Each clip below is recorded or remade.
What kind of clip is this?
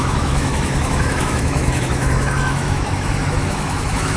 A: remade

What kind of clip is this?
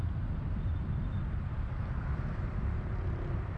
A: recorded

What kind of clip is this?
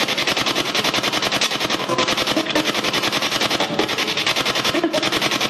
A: recorded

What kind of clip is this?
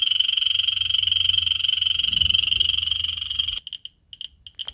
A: recorded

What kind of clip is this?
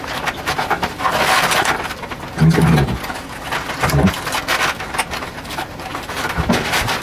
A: recorded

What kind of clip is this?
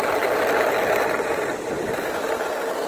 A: recorded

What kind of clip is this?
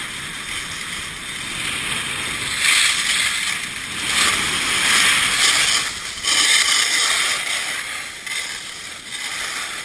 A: recorded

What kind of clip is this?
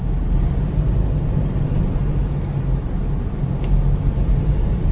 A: recorded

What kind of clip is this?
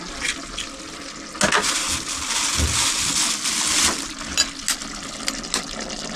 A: recorded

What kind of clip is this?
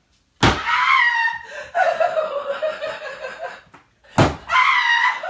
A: recorded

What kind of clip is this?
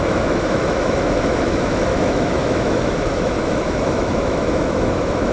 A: remade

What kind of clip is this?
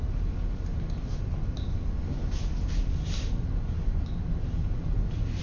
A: recorded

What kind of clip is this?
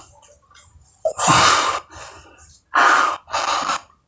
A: recorded